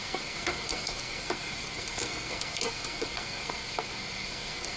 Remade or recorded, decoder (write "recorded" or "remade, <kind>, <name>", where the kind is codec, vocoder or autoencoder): remade, codec, SNAC